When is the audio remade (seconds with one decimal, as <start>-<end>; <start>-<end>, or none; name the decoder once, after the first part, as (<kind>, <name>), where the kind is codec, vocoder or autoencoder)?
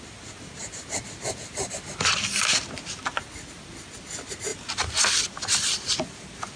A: none